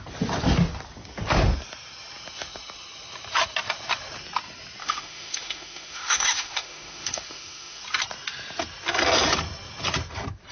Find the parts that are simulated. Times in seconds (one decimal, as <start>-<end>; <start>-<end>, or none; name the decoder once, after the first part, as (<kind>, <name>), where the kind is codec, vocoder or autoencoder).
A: 4.8-7.8 (autoencoder, DAC-VAE)